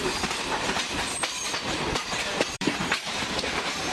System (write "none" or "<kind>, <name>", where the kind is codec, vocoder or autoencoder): vocoder, BigVGAN v2